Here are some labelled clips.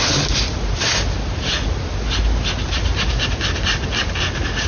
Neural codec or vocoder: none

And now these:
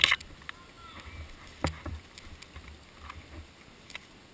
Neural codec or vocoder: none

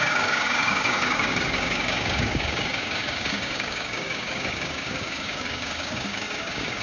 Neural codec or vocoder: codec, DAC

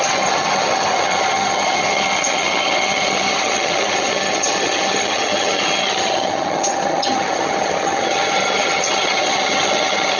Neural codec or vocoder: vocoder, HiFi-GAN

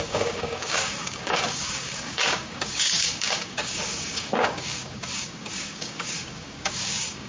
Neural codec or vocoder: codec, DAC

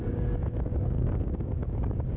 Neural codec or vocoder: codec, DAC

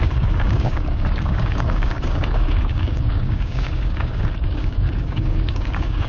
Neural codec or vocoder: codec, DAC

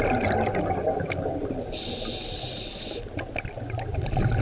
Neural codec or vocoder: none